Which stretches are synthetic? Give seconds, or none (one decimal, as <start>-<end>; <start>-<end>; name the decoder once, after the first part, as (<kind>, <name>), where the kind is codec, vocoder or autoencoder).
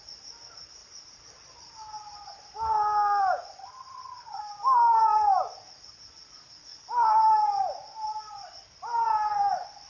3.6-4.4 (vocoder, HiFi-GAN)